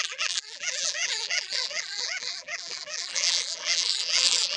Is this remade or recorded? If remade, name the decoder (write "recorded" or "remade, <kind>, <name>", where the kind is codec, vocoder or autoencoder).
remade, vocoder, BigVGAN v2